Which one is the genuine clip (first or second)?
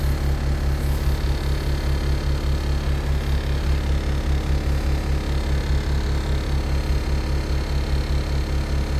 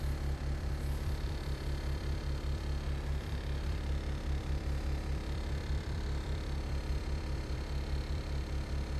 first